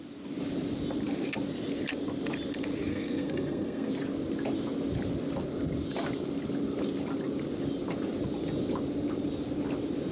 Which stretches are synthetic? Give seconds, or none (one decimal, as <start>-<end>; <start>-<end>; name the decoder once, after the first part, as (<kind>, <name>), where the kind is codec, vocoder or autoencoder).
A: 2.9-3.9 (codec, SNAC)

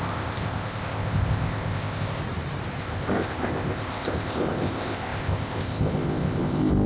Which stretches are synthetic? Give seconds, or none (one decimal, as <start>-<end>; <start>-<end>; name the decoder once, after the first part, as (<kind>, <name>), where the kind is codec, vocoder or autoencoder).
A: 0.0-2.2 (codec, ZipCodec); 2.8-6.9

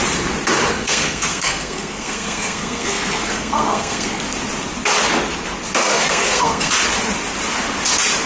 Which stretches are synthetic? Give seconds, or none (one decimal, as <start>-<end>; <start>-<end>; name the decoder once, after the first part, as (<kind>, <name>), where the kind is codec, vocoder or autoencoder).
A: 0.8-4.2 (codec, SNAC); 5.8-6.7